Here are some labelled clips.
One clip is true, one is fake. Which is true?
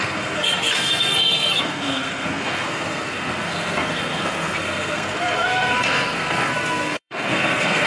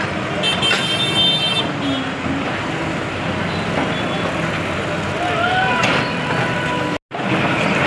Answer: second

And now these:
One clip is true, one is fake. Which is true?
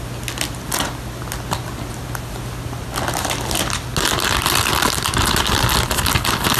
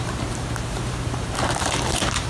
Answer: first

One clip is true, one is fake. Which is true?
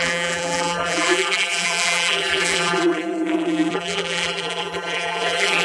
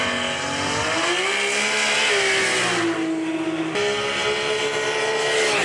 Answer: second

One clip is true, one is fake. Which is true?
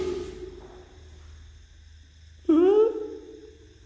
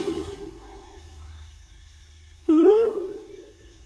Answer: first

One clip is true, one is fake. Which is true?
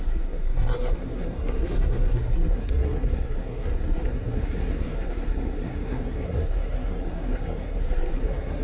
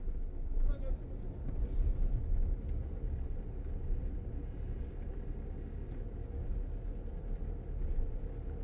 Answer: second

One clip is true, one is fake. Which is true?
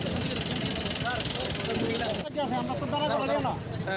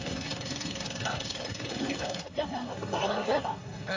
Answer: first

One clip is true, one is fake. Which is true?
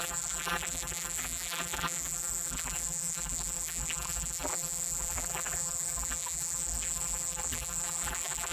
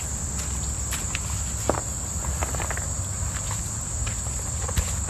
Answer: second